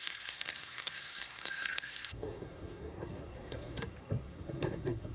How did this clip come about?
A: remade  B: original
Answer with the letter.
A